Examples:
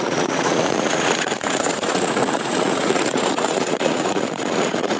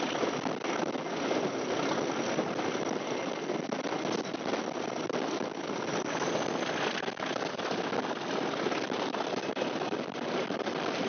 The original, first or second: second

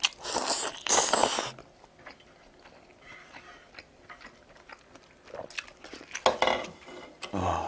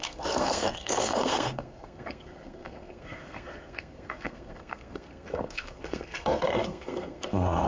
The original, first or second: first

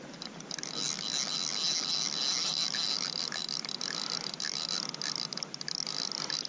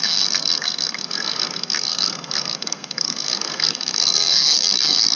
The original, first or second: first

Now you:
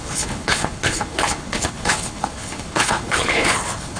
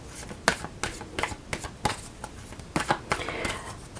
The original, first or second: second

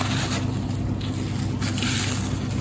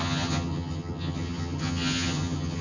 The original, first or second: first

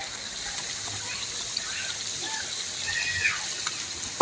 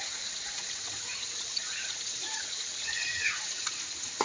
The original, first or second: first